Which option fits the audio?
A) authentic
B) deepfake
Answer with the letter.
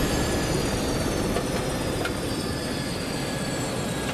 A